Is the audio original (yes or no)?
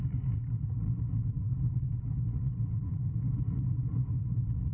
no